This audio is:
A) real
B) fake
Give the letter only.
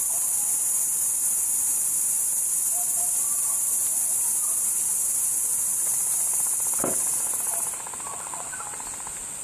A